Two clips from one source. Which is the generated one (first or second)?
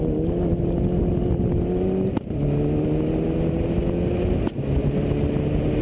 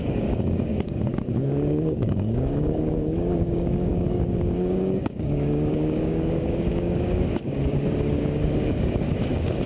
second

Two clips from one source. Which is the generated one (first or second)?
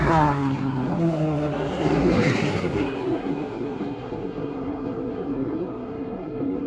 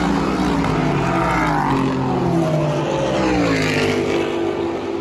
first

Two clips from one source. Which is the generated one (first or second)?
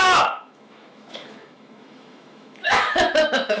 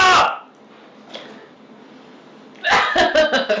first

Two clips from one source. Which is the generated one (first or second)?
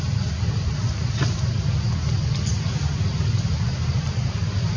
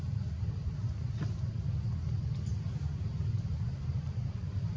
second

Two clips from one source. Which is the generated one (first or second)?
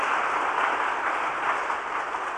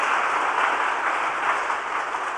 first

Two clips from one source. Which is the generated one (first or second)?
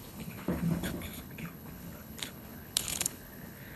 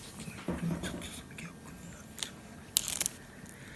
first